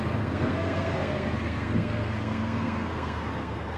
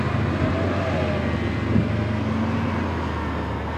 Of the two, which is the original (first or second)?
second